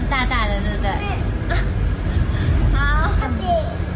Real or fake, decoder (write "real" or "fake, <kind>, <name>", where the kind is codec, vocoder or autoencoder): real